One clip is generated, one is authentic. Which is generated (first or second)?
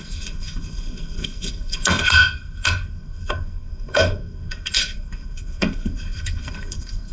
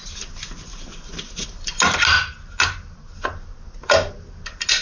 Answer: first